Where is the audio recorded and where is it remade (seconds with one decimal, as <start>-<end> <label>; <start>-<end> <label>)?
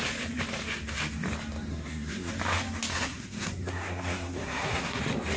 0.0-1.7 recorded; 1.7-2.3 remade; 2.3-2.9 recorded; 2.9-5.0 remade; 5.0-5.4 recorded